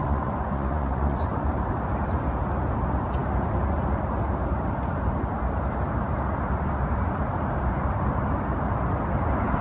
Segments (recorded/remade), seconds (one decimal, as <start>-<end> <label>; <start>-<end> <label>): 0.0-1.5 remade; 1.5-9.6 recorded